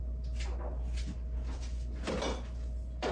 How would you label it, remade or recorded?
recorded